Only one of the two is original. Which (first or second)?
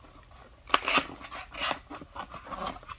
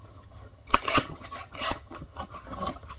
first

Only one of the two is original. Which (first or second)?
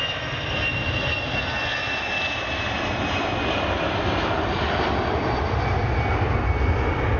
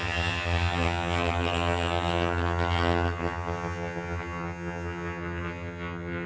first